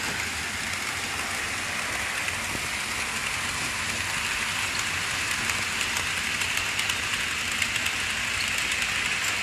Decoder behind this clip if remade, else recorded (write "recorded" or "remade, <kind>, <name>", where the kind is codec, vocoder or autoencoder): recorded